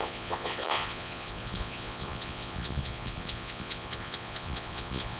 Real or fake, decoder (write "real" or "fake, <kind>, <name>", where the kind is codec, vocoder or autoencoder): fake, vocoder, Vocos